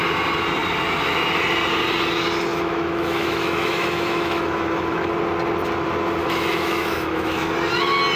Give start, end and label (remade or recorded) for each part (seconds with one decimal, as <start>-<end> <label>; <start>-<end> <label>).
0.0-2.5 recorded; 2.5-5.1 remade; 5.1-6.2 recorded; 6.2-7.5 remade; 7.5-8.2 recorded